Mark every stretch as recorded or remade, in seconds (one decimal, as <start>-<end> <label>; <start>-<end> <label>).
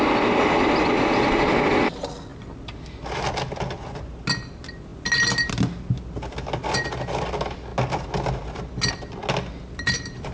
0.0-10.3 recorded